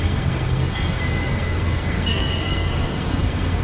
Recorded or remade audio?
remade